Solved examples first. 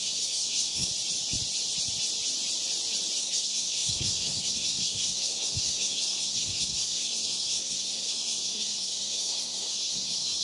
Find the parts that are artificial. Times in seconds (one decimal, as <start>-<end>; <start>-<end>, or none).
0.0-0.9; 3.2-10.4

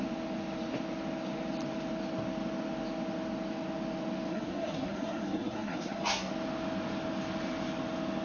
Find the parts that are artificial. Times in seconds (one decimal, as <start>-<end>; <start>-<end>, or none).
4.3-6.3

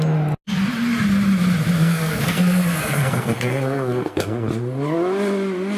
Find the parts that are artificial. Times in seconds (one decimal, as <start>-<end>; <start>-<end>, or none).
1.8-4.5

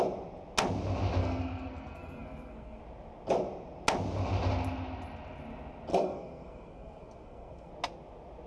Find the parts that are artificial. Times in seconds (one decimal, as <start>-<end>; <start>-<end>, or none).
1.2-2.8; 5.9-7.7

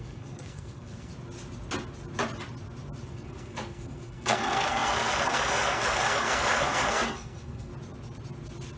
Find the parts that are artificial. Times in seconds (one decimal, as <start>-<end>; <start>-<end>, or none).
0.0-1.1; 3.1-7.7